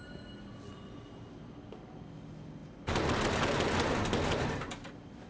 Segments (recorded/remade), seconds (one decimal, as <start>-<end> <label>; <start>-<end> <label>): 0.0-5.3 recorded